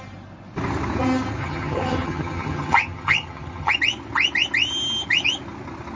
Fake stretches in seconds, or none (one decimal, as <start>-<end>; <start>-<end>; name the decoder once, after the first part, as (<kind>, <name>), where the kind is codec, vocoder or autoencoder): 1.4-3.7 (vocoder, HiFi-GAN)